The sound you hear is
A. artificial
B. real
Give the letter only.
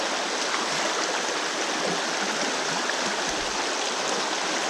B